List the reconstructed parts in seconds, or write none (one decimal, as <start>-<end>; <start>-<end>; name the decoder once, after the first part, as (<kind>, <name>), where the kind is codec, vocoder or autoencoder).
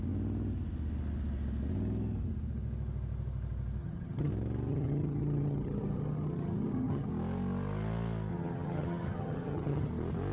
3.8-4.3 (vocoder, HiFi-GAN); 4.7-7.1; 8.3-9.9